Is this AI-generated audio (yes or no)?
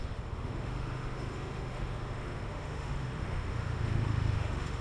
yes